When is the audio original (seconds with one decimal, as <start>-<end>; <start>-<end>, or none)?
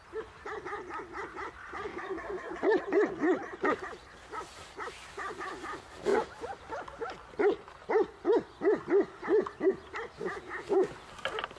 0.0-1.9; 2.5-11.6